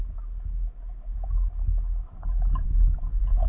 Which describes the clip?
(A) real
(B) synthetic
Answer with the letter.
A